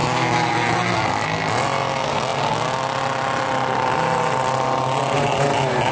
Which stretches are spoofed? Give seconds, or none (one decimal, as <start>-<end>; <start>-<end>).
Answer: none